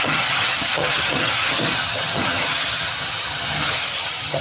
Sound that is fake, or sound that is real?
fake